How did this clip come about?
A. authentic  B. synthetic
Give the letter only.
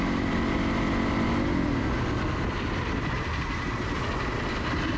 A